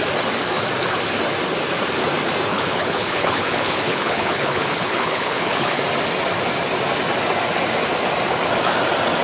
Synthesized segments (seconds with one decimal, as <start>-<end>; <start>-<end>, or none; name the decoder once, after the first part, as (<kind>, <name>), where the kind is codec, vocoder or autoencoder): 2.5-5.8 (codec, HILCodec)